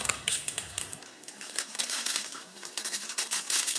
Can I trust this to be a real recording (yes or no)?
no